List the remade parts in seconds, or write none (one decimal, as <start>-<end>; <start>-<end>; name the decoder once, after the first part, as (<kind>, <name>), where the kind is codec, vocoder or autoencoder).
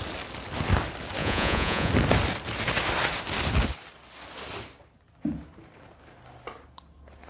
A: 1.2-1.9 (vocoder, Vocos)